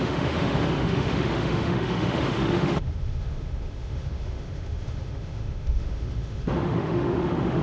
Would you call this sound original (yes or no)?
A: no